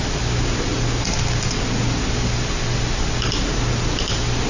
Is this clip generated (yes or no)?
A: no